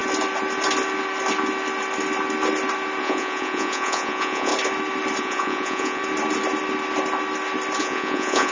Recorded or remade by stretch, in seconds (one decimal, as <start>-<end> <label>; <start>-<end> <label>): 0.0-3.0 recorded; 3.0-4.5 remade; 4.5-5.2 recorded; 5.2-6.0 remade; 6.0-7.8 recorded; 7.8-8.5 remade